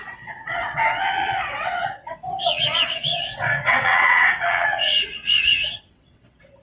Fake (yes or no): yes